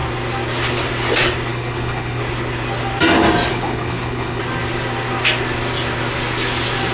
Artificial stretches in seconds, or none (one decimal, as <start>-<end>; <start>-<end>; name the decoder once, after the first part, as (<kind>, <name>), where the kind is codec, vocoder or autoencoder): 1.5-2.2 (codec, HILCodec); 3.5-4.4